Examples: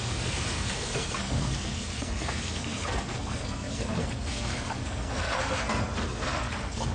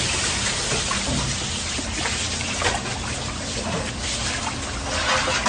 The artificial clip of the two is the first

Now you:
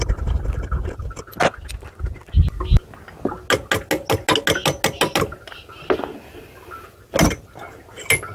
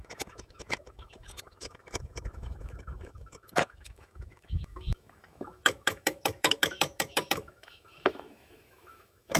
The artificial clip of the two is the second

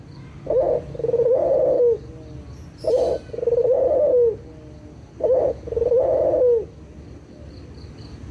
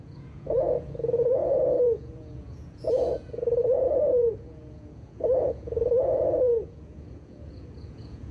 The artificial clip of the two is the second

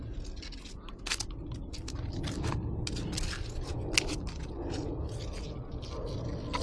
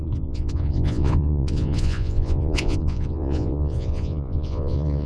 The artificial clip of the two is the second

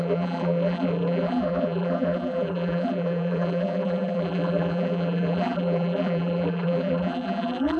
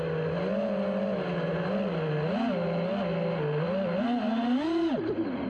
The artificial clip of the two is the first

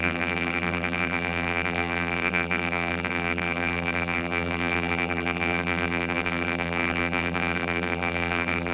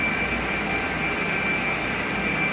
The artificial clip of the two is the first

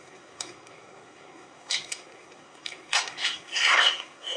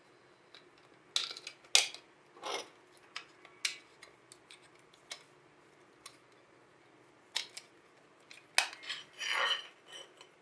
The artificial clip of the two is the first